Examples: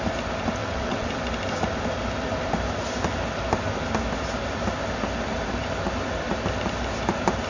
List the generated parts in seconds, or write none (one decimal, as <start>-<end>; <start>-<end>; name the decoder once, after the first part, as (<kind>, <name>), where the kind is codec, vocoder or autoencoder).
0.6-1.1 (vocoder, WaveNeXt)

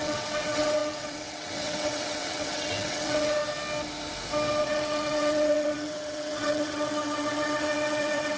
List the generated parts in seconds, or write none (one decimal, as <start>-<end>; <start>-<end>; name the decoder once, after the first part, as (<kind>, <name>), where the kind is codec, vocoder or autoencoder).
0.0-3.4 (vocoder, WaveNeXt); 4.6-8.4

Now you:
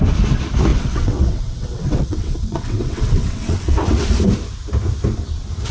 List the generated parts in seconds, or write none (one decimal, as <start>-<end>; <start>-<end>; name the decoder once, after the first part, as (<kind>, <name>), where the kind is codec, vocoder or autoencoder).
0.7-4.1 (vocoder, WaveNeXt)

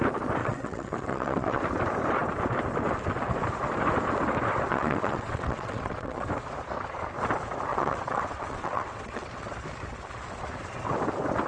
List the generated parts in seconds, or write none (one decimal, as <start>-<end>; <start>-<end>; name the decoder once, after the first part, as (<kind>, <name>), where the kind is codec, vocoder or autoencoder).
0.4-1.6 (vocoder, WaveNeXt); 4.7-6.3; 7.7-9.3

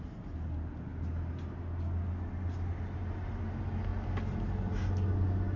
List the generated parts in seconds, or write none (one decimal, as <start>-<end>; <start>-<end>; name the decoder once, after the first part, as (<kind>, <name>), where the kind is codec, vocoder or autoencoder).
none